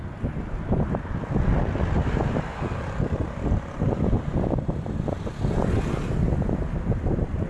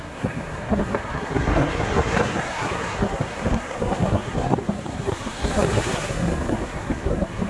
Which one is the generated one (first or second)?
second